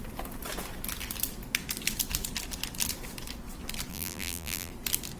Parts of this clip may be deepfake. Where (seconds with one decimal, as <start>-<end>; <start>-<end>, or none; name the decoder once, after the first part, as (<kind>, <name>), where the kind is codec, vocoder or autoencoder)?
3.9-4.7 (vocoder, BigVGAN v2)